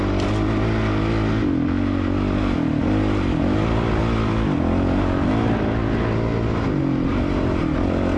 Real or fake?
real